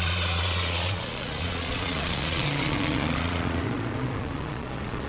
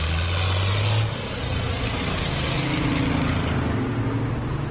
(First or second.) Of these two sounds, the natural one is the second